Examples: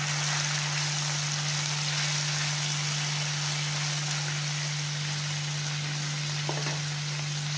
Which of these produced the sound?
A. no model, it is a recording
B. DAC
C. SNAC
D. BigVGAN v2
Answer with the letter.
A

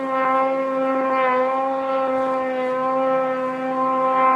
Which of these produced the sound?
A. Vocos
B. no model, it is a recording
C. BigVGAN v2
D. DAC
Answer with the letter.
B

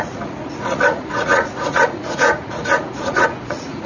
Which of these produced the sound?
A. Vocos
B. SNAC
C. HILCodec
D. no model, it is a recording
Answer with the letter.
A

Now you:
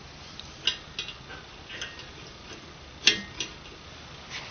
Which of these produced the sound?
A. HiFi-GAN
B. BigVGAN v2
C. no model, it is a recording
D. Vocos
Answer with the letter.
C